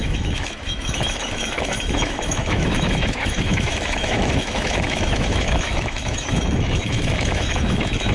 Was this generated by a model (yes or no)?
yes